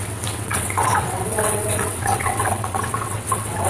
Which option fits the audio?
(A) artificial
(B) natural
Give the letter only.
A